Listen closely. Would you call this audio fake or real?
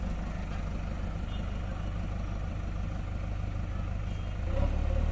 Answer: real